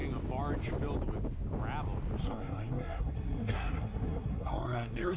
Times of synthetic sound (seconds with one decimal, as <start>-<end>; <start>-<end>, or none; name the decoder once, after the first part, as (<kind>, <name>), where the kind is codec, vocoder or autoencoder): 2.2-5.2 (codec, SNAC)